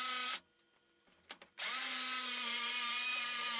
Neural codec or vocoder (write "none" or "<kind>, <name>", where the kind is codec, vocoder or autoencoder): none